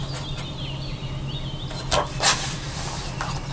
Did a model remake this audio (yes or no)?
no